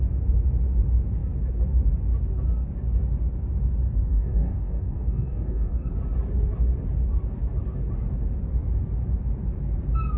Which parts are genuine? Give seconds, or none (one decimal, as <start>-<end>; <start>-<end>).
0.0-4.1; 5.9-10.2